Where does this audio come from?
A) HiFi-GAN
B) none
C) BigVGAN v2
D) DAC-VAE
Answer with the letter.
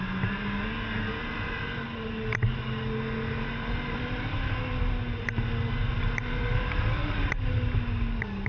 B